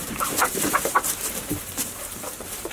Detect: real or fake fake